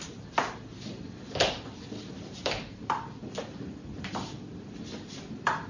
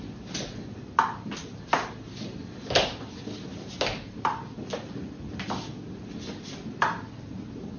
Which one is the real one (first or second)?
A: second